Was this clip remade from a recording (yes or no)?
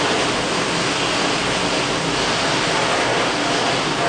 no